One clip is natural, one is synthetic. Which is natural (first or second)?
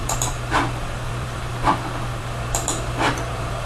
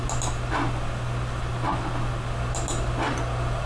second